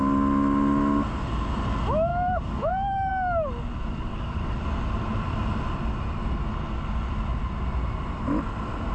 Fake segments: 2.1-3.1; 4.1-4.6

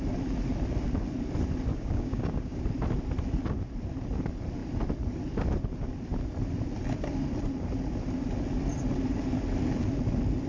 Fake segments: 1.7-2.6